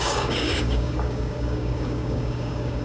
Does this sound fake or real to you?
fake